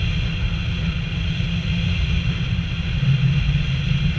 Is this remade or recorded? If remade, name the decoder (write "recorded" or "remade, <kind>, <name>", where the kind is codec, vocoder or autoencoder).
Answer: recorded